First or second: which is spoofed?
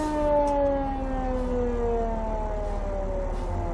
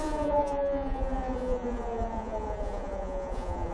second